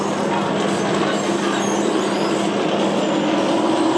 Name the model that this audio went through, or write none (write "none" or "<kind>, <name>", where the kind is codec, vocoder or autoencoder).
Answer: none